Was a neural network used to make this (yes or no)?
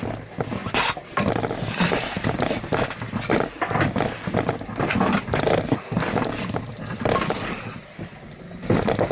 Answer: no